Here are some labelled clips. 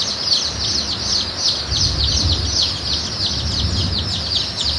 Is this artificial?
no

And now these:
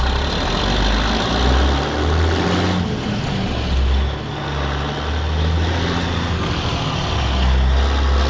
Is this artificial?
no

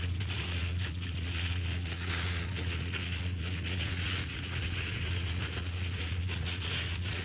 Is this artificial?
yes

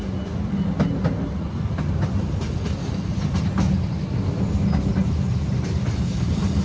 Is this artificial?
no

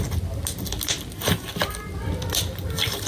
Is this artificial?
no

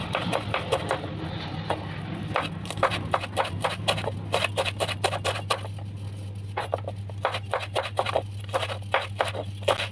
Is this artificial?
no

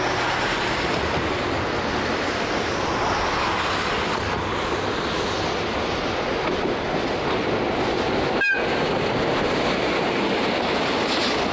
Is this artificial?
no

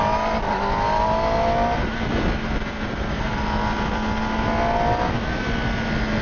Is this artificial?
no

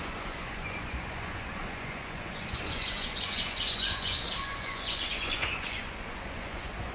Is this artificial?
yes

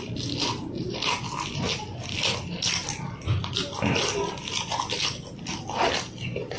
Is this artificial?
no